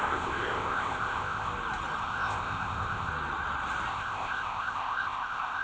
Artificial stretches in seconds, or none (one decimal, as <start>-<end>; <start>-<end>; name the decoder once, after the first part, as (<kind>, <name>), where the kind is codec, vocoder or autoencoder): 0.0-1.5 (codec, ZipCodec); 2.0-3.1; 3.9-5.6